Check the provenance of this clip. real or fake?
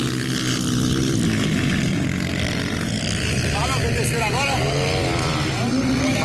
real